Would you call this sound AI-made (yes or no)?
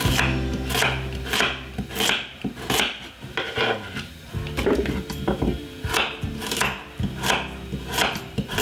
no